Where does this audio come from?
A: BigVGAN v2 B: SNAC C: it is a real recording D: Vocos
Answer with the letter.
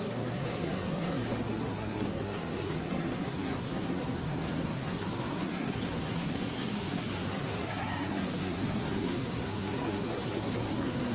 B